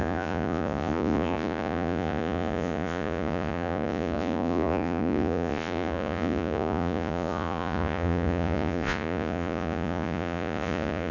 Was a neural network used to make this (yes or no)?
yes